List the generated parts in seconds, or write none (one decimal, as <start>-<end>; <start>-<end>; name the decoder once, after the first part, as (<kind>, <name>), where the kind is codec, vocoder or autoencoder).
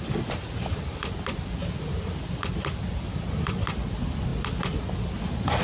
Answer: none